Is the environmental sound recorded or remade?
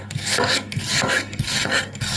remade